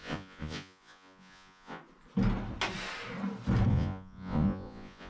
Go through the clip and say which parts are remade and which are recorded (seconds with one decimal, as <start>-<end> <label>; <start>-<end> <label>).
0.0-1.8 remade; 1.8-3.7 recorded; 3.7-5.1 remade